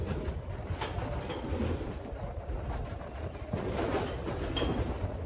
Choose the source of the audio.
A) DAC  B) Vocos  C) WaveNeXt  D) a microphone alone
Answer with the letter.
D